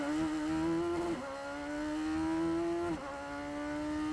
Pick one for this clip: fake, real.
real